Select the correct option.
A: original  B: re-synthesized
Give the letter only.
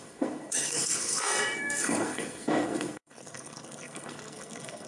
B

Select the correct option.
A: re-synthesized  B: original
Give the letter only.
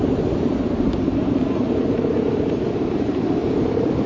B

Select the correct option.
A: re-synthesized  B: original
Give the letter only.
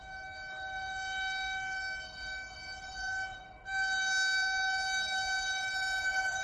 A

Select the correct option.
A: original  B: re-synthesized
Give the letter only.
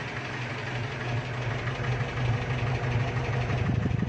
A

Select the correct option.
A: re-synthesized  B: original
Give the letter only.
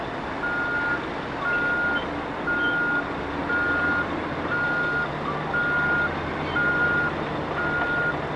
B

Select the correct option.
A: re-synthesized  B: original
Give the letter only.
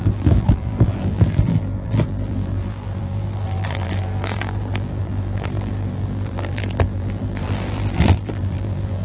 A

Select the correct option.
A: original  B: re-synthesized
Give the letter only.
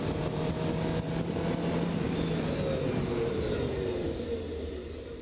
A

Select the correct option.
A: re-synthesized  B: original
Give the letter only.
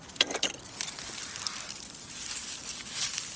B